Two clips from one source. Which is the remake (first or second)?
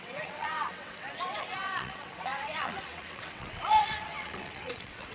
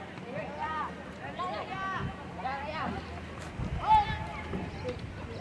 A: first